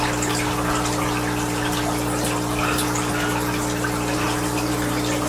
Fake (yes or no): no